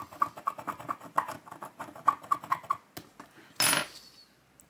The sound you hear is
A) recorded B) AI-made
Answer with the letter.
A